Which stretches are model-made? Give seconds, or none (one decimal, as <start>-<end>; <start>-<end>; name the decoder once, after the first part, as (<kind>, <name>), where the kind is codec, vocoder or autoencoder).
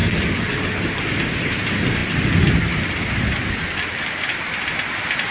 none